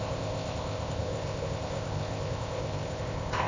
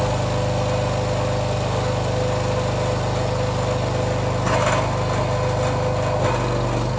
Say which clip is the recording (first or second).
second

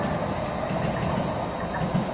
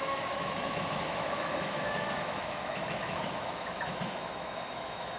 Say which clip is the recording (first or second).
first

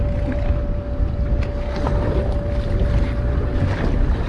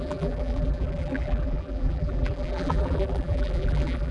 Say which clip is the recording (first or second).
first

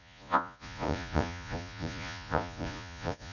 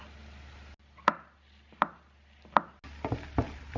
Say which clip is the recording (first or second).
second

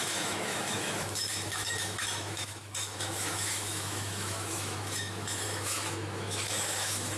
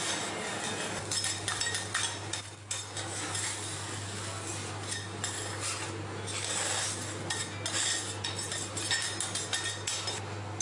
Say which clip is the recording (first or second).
second